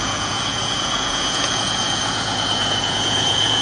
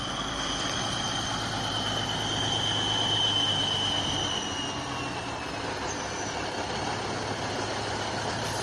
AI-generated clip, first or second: first